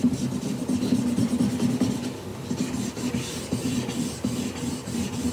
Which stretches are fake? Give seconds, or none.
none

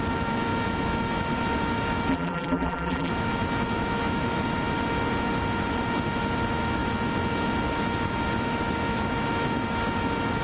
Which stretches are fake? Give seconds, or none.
2.1-3.1 (vocoder, BigVGAN v2)